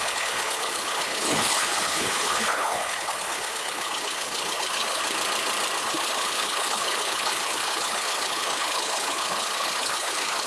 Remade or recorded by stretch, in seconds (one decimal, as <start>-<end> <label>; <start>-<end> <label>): 0.0-5.0 remade; 5.0-5.8 recorded; 5.8-10.5 remade